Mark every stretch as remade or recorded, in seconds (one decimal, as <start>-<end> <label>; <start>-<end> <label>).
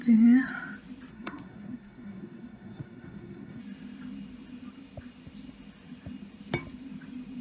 0.0-1.1 recorded; 1.1-3.6 remade; 3.6-7.4 recorded